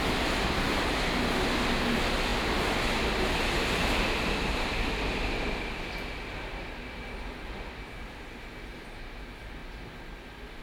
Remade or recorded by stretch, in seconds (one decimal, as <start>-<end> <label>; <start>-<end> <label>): 0.0-10.6 recorded